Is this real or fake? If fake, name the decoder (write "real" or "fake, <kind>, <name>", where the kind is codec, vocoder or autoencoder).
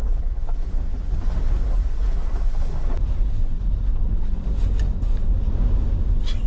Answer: real